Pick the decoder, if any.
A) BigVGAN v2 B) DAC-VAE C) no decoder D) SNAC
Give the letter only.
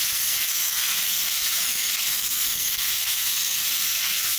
D